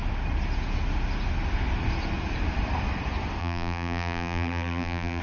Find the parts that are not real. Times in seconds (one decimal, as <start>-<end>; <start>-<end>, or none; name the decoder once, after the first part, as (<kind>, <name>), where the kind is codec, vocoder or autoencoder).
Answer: 3.4-5.2 (vocoder, BigVGAN v2)